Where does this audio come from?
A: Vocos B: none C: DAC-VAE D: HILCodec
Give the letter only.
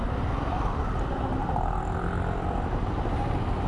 B